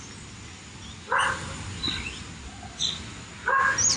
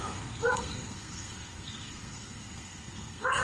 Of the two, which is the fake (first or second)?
second